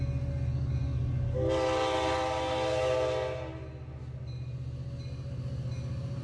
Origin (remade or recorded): recorded